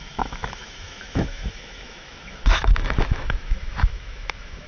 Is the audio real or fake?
fake